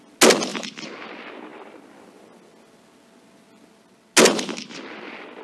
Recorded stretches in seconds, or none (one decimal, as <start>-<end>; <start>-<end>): 0.0-0.5; 1.1-5.4